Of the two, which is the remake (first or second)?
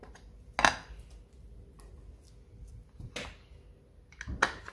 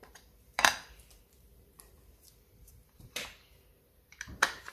second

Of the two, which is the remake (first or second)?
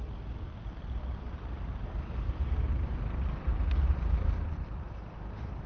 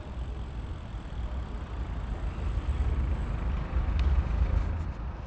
first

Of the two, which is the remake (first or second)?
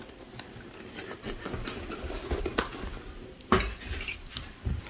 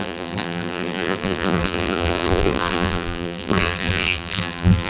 second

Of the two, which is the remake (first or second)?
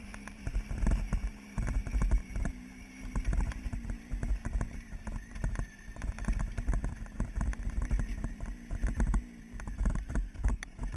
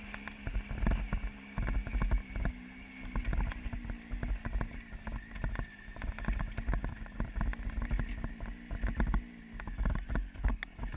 first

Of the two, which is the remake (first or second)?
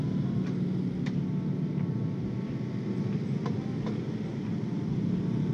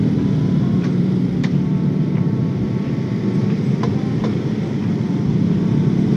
second